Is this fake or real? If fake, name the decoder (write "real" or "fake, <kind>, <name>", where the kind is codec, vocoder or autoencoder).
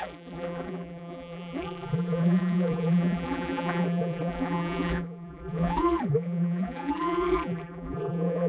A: fake, vocoder, BigVGAN v2